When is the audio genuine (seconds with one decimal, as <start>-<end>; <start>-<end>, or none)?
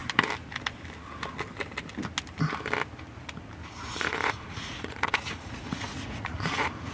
0.0-3.8